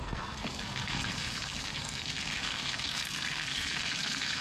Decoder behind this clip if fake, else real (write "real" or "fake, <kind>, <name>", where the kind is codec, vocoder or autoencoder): fake, codec, SNAC